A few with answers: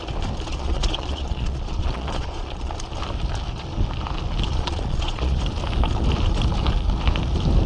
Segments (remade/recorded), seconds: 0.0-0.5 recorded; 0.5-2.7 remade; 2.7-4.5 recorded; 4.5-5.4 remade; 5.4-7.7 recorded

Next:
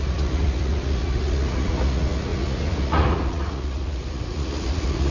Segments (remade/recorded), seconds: 0.0-5.1 remade

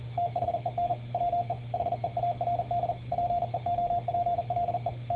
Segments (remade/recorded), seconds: 0.0-2.1 remade; 2.1-3.1 recorded; 3.1-5.2 remade

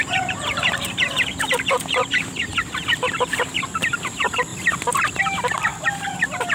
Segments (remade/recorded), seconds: 0.0-4.5 remade; 4.5-5.2 recorded; 5.2-5.7 remade; 5.7-6.5 recorded

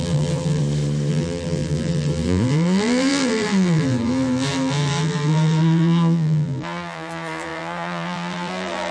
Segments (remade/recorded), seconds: 0.0-0.6 remade; 0.6-1.1 recorded; 1.1-8.9 remade